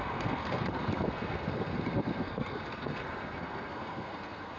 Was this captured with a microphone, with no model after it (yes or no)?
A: no